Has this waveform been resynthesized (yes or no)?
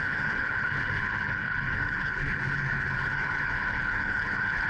yes